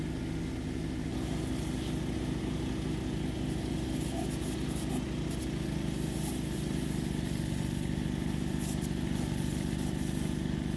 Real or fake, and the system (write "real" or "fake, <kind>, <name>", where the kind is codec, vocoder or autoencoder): real